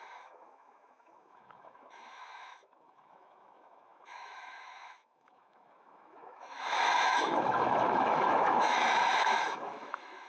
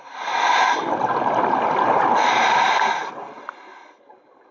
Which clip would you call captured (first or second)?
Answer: second